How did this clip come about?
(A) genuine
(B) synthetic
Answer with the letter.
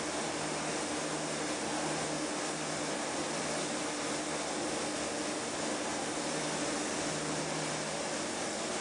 A